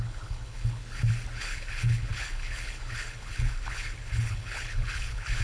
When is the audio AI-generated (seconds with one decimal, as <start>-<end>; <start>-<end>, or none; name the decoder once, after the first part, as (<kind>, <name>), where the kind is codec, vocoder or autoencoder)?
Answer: 0.0-0.8 (codec, HILCodec); 1.4-5.4